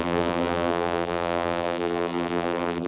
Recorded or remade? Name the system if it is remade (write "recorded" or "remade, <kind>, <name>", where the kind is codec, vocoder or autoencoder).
remade, vocoder, BigVGAN v2